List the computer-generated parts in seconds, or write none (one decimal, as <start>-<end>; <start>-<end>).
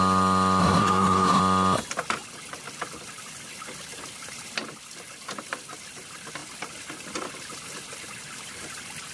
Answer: 0.6-1.4